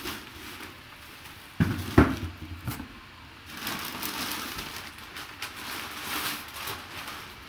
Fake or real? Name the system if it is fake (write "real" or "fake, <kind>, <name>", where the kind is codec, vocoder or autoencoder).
real